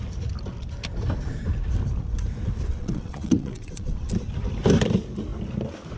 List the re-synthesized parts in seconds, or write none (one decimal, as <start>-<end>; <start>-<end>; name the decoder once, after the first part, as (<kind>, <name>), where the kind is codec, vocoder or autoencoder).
2.7-4.1 (vocoder, WaveNeXt)